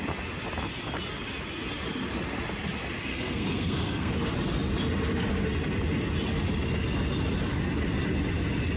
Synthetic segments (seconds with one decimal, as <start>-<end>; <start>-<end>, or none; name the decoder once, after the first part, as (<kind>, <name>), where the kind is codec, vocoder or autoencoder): 3.1-4.1 (codec, SNAC)